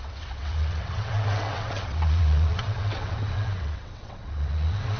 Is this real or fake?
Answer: fake